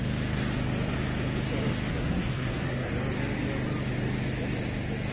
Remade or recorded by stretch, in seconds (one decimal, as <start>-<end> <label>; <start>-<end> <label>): 0.0-1.9 recorded; 1.9-2.9 remade; 2.9-5.1 recorded